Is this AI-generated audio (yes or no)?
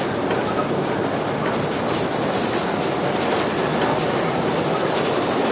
no